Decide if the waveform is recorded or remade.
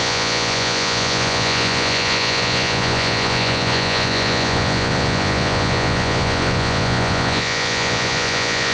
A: remade